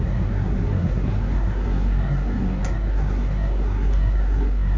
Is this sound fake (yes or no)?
yes